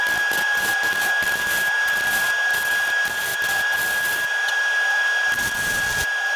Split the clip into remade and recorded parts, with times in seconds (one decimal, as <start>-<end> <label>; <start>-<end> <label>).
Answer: 0.0-6.4 recorded